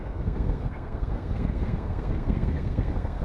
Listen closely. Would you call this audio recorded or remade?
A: remade